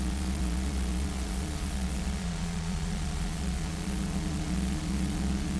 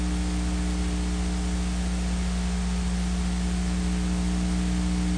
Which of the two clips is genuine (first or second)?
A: second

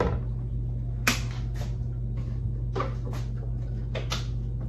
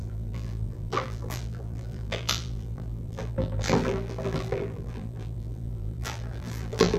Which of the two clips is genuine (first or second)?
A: first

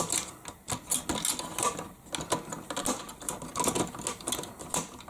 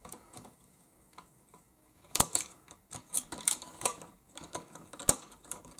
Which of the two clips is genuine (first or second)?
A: first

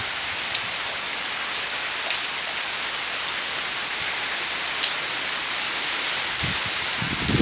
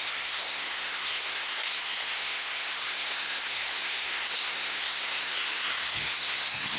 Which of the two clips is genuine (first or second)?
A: first